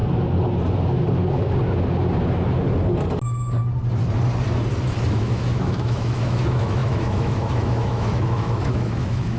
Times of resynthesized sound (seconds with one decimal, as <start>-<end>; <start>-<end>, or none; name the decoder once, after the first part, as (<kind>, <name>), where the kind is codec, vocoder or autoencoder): 5.1-9.4 (autoencoder, DAC-VAE)